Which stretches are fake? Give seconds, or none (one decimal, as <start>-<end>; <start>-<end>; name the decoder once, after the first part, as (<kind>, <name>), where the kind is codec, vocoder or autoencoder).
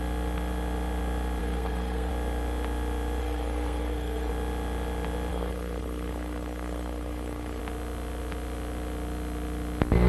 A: 1.4-2.1 (codec, SNAC); 3.2-4.3; 5.3-7.6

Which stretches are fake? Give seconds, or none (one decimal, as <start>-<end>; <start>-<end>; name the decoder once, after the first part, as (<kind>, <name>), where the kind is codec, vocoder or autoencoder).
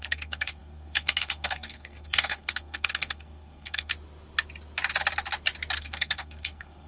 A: 0.0-3.9 (codec, SNAC); 5.8-6.9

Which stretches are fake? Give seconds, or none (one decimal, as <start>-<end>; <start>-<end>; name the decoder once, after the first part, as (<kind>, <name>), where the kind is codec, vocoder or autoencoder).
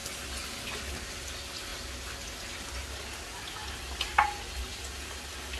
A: none